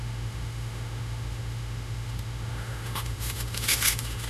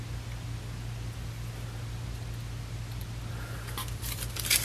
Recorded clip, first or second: second